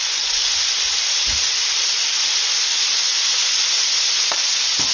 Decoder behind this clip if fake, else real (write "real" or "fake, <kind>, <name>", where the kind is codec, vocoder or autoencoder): real